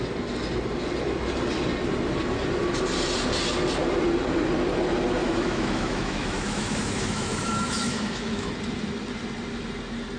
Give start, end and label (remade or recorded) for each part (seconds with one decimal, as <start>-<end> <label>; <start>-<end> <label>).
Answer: 0.0-5.2 recorded; 5.2-8.5 remade; 8.5-10.2 recorded